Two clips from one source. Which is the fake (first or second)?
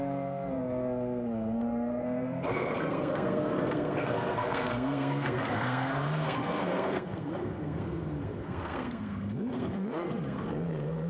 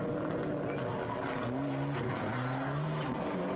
first